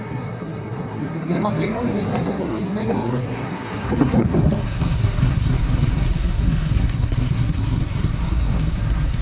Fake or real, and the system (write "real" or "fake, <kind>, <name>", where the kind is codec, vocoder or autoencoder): fake, codec, SNAC